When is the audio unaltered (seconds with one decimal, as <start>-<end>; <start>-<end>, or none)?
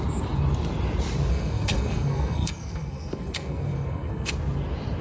0.0-1.3; 4.3-5.0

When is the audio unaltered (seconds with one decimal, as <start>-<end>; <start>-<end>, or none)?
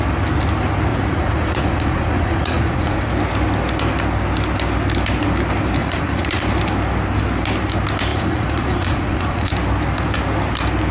0.0-0.9; 3.1-5.8; 6.4-8.1; 9.5-10.9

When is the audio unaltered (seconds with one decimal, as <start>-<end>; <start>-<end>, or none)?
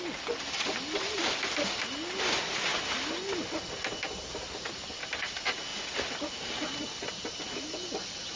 0.0-8.4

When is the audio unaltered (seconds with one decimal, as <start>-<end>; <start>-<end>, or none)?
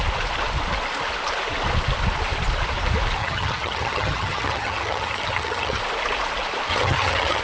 0.0-3.2; 5.8-6.7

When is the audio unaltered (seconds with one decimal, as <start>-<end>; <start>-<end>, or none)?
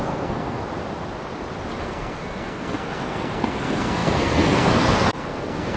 0.6-1.8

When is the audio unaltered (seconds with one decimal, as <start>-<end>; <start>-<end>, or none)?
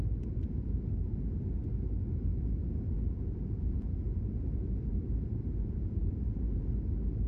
0.0-2.3; 6.7-7.3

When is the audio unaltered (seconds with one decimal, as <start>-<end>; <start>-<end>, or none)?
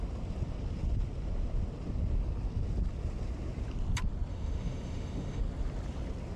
0.0-4.3; 5.4-6.4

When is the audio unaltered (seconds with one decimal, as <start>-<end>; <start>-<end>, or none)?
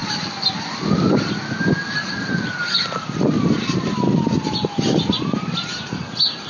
0.0-6.5